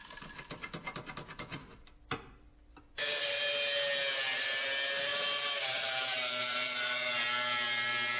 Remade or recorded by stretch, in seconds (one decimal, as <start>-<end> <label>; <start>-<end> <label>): 0.0-5.1 recorded; 5.1-7.1 remade; 7.1-8.2 recorded

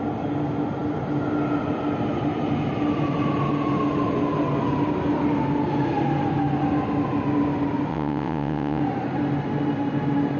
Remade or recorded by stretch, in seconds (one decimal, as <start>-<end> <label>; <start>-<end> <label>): 0.0-7.9 recorded; 7.9-8.8 remade; 8.8-10.4 recorded